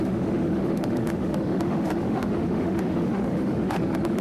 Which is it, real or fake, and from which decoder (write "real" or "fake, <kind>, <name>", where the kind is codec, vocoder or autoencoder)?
fake, autoencoder, DAC-VAE